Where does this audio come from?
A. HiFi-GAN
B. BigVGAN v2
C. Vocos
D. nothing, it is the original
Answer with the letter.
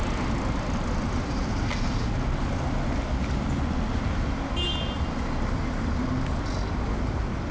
D